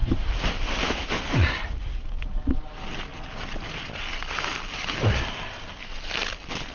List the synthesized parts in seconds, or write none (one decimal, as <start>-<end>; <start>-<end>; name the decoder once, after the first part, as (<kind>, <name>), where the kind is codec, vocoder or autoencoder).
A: 0.0-2.5 (vocoder, BigVGAN v2)